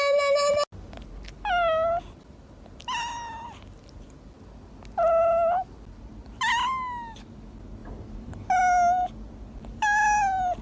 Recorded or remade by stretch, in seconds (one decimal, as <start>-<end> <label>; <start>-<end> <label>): 0.0-7.8 recorded; 7.8-8.6 remade; 8.6-10.6 recorded